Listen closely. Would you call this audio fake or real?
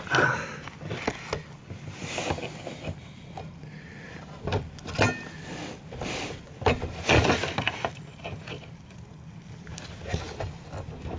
real